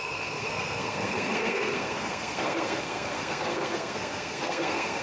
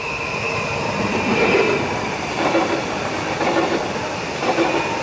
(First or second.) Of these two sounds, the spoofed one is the first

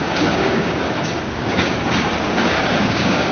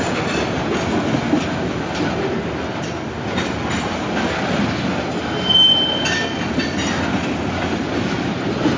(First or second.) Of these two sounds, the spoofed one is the first